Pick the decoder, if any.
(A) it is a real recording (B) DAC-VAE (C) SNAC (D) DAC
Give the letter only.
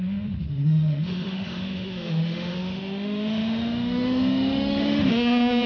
B